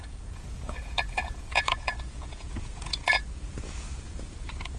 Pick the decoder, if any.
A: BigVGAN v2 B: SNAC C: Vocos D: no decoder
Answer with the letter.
C